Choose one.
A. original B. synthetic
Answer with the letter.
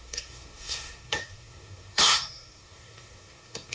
B